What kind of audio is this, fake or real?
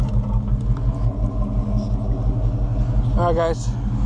real